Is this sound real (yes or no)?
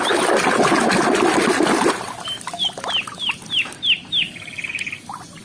yes